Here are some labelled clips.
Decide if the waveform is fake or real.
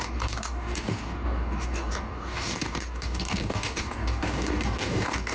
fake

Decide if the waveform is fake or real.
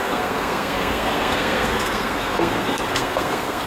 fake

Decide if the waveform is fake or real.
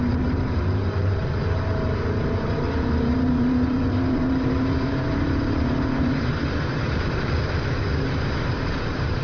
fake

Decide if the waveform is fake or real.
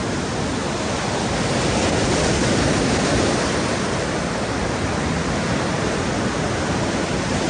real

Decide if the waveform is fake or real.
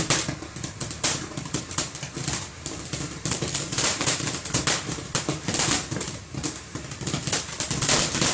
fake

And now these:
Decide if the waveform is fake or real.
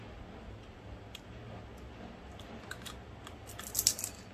real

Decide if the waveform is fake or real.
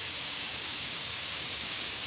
fake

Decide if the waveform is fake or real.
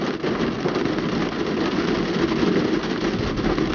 real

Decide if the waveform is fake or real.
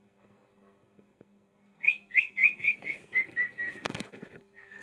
fake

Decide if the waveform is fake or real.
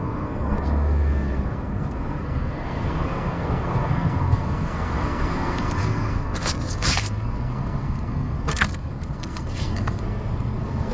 fake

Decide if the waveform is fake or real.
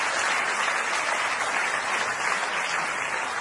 real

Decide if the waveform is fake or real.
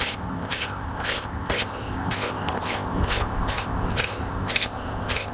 fake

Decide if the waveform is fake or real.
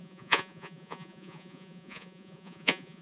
fake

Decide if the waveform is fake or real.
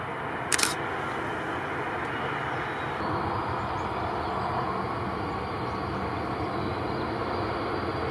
real